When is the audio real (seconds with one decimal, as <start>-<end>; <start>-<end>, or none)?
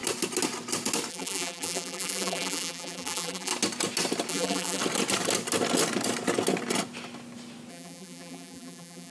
0.0-1.1; 3.5-4.3; 4.8-7.7